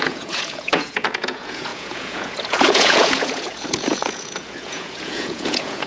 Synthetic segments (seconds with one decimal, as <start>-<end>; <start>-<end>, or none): 0.0-5.9